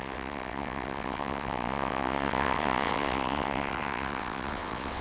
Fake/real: fake